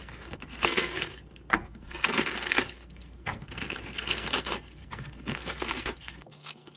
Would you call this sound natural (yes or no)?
no